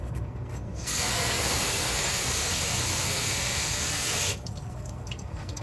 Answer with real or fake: fake